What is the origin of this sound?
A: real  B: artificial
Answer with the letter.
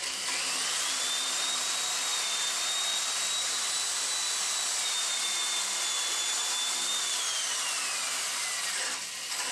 A